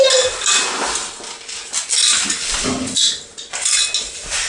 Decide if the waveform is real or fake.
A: real